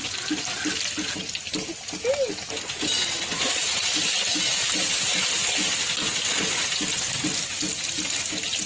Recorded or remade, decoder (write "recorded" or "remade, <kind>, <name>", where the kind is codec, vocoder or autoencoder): recorded